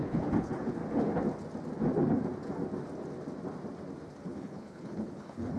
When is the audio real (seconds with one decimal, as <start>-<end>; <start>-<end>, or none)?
0.8-4.2